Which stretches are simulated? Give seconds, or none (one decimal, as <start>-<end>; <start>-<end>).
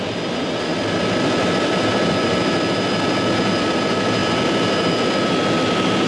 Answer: 0.0-4.2